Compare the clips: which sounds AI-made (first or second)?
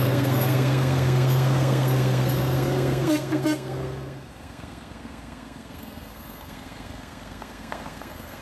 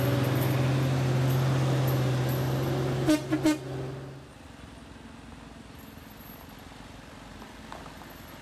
first